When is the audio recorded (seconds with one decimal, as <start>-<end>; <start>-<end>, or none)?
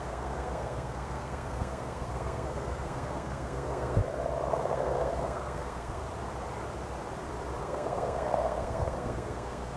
4.0-4.5; 6.0-7.6